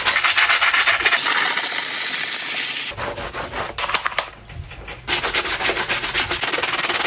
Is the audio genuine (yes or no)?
yes